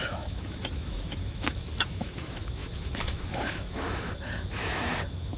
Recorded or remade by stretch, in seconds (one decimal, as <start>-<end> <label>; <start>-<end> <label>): 0.0-5.4 remade